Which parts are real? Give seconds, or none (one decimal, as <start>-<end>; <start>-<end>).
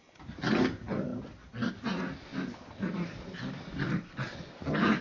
0.0-5.0